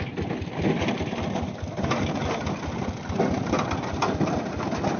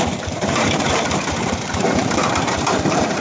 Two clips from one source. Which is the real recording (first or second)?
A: first